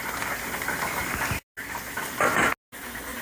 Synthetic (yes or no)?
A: no